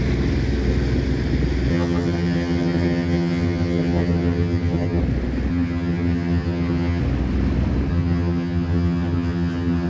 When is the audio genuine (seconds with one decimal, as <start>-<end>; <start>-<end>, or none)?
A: 0.0-1.7; 5.0-5.5; 7.0-7.9